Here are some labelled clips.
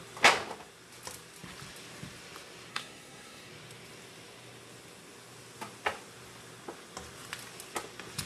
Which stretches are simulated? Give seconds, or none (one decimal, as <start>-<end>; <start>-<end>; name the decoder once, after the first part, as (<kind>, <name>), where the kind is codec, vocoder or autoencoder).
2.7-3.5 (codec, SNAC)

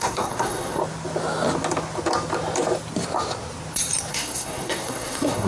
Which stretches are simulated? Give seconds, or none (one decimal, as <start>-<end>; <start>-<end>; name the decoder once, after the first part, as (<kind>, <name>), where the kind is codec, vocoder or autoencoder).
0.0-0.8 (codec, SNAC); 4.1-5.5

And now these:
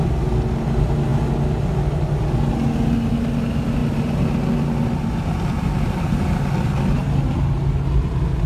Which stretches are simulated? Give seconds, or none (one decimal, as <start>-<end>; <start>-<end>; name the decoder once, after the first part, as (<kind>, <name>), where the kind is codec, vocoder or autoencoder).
none